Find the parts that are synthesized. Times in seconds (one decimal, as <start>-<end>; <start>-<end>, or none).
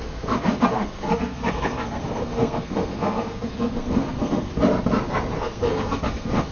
0.0-4.5; 5.4-6.5